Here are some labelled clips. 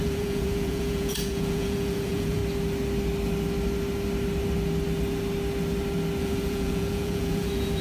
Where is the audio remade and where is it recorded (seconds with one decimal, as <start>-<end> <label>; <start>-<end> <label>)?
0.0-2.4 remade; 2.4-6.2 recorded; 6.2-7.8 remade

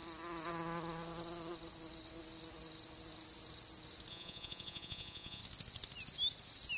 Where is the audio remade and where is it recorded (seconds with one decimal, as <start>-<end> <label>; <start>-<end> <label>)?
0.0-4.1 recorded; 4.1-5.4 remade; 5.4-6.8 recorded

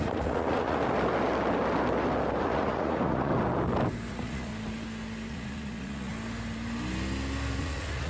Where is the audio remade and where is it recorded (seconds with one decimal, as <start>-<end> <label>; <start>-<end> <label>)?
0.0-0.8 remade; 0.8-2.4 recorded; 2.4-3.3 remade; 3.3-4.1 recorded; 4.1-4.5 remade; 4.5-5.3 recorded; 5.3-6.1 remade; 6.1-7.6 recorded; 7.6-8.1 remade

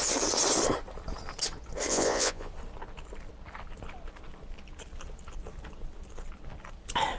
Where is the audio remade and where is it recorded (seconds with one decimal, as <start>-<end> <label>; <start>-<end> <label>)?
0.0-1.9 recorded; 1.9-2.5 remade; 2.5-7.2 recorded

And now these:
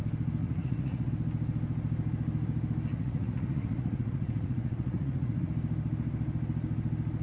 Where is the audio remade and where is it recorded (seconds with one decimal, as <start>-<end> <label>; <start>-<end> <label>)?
0.0-0.4 recorded; 0.4-1.1 remade; 1.1-2.9 recorded; 2.9-5.5 remade; 5.5-7.2 recorded

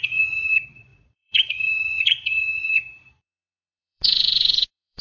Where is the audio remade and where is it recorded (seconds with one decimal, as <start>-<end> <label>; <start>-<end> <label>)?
0.0-5.0 remade